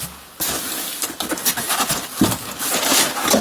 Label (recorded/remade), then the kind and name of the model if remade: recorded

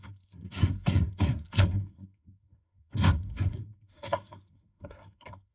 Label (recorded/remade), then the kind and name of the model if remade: remade, codec, SNAC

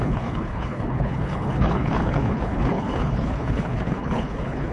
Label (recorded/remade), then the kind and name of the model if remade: remade, codec, HILCodec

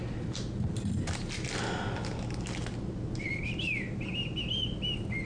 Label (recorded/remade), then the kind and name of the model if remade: recorded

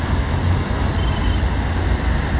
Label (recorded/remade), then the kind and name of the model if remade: recorded